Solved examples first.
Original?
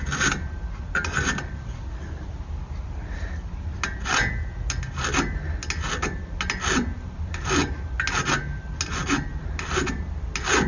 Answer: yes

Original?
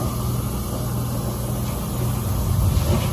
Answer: yes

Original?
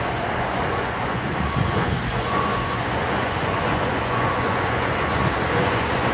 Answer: no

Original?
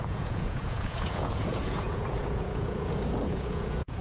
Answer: no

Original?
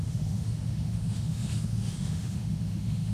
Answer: no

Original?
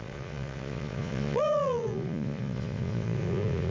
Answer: no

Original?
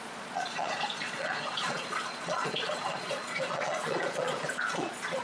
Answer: no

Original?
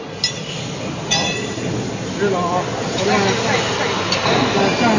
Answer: yes